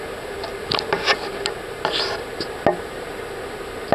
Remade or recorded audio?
recorded